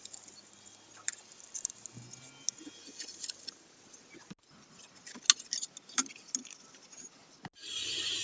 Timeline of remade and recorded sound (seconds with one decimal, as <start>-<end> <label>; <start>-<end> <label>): 0.0-8.2 recorded